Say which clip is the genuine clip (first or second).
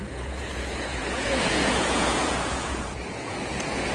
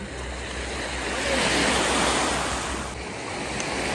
second